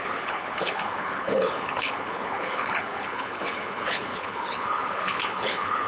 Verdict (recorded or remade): remade